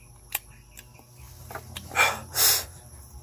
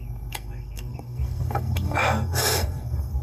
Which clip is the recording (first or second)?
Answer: first